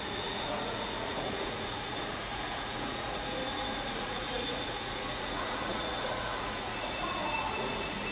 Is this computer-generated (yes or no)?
yes